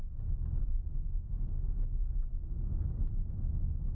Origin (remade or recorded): recorded